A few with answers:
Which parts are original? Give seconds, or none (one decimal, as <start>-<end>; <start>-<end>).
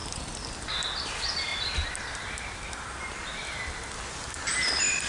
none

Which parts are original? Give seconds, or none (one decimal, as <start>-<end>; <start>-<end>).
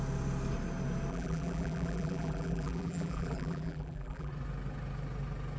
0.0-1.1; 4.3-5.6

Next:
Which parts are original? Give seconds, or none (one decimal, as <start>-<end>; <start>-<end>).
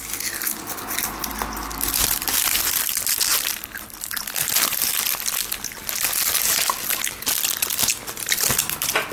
0.0-1.3; 5.3-7.9